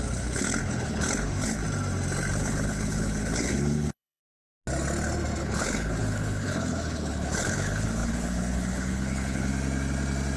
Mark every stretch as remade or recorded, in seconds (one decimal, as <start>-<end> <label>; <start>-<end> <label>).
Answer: 0.0-1.6 remade; 1.6-2.3 recorded; 2.3-4.2 remade; 4.2-5.4 recorded; 5.4-9.5 remade; 9.5-10.4 recorded